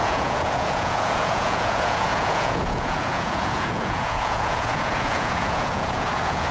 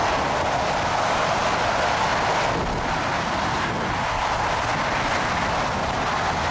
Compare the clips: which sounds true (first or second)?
second